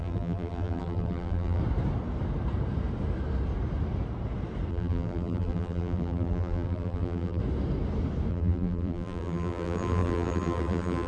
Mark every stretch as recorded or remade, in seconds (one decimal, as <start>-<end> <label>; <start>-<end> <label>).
0.0-1.6 remade; 1.6-4.7 recorded; 4.7-7.4 remade; 7.4-8.3 recorded; 8.3-11.1 remade